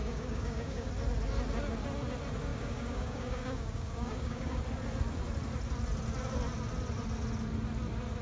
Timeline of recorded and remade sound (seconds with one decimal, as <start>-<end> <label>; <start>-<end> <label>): 0.0-0.9 remade; 0.9-2.5 recorded; 2.5-4.6 remade; 4.6-8.2 recorded